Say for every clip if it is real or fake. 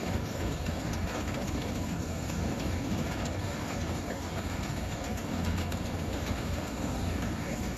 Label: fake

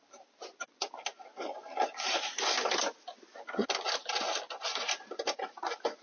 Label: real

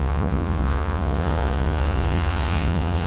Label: fake